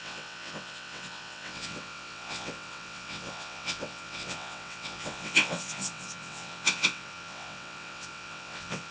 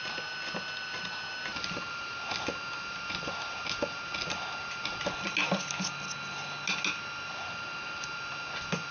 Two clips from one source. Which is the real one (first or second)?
second